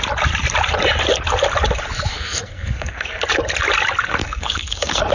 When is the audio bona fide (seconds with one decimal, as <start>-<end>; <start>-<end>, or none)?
0.0-2.1; 3.2-4.2